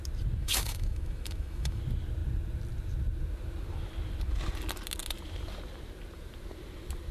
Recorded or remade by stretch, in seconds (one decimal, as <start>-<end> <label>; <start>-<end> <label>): 0.0-0.4 recorded; 0.4-1.8 remade; 1.8-7.1 recorded